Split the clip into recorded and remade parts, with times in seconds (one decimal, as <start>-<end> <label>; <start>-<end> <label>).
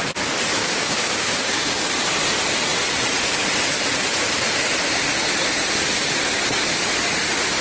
0.0-0.6 recorded; 0.6-1.9 remade; 1.9-7.6 recorded